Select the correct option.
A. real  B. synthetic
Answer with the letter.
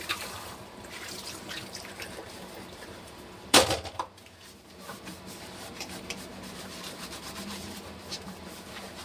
B